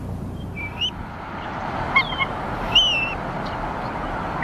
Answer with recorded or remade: recorded